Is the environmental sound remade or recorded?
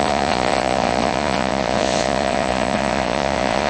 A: remade